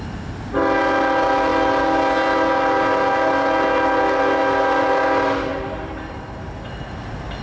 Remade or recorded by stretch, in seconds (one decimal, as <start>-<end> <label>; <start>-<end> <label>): 0.0-5.5 recorded; 5.5-6.7 remade; 6.7-7.4 recorded

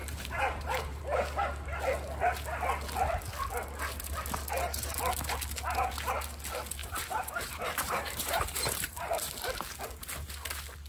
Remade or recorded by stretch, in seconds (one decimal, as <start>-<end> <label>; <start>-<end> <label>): 0.0-1.0 remade; 1.0-6.8 recorded; 6.8-9.4 remade; 9.4-10.9 recorded